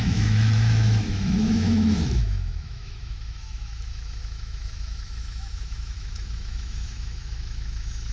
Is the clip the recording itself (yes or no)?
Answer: no